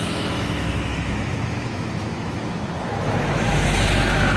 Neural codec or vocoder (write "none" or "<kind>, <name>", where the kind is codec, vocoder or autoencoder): autoencoder, DAC-VAE